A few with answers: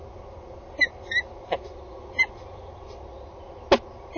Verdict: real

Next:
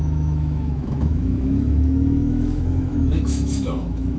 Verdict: fake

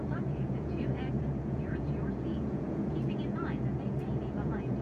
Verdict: fake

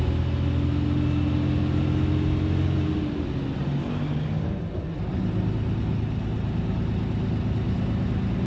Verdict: real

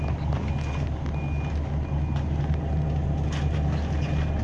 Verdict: real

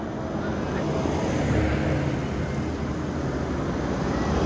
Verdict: real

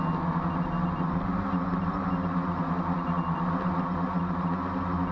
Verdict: real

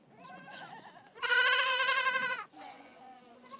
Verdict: fake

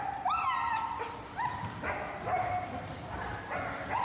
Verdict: real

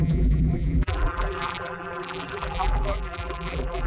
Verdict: fake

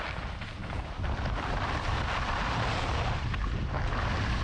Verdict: real